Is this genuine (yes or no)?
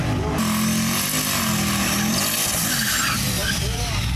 yes